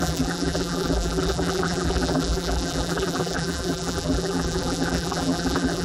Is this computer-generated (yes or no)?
yes